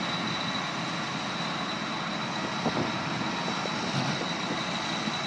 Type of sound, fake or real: real